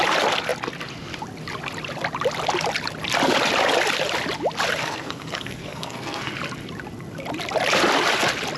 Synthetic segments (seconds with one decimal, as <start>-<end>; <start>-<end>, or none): 4.8-6.3